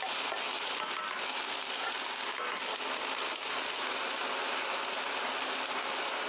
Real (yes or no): yes